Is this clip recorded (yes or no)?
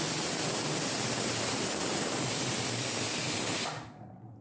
yes